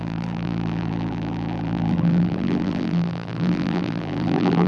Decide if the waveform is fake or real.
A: fake